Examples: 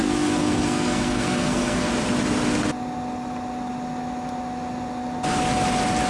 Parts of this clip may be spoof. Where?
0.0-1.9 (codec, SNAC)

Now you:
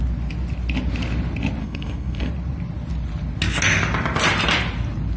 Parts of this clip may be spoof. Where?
1.6-2.3 (codec, SNAC)

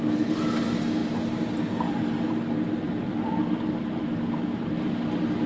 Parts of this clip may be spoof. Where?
none

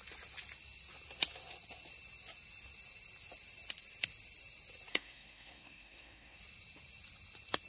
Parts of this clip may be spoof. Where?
4.9-6.4 (codec, SNAC)

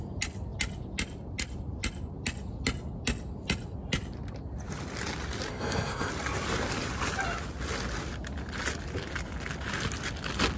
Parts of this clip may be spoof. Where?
5.5-6.1 (codec, SNAC)

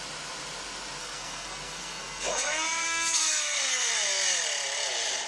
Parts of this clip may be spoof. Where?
1.0-3.9 (codec, SNAC)